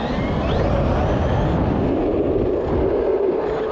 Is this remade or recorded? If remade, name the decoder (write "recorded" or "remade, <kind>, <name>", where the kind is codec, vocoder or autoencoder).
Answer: recorded